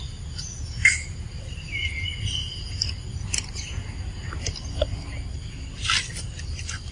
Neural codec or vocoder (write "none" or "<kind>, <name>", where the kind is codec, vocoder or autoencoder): none